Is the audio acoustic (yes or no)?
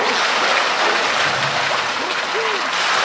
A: yes